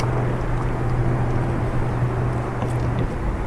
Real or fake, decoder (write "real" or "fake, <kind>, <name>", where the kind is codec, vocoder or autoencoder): real